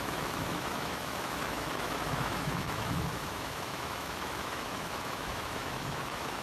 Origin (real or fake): fake